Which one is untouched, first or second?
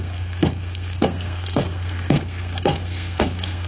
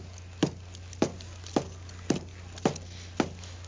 second